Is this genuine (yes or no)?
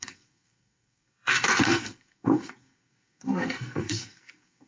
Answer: no